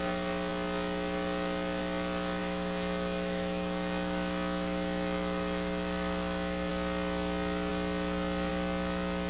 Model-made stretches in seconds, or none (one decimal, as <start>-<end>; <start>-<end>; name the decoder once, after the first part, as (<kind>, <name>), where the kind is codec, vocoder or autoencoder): 2.4-6.7 (autoencoder, DAC-VAE)